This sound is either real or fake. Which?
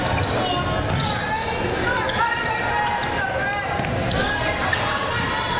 real